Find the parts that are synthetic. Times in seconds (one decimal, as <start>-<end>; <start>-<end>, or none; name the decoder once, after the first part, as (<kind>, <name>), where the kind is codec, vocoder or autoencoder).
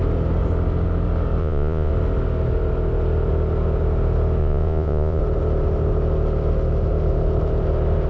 1.4-1.9 (vocoder, Vocos); 4.4-5.2